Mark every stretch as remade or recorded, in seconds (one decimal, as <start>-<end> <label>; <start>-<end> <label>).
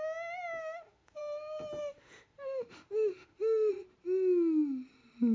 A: 0.0-0.6 recorded; 0.6-1.2 remade; 1.2-1.8 recorded; 1.8-3.7 remade; 3.7-5.3 recorded